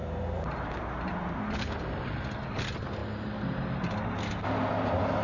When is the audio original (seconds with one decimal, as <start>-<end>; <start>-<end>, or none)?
0.8-5.2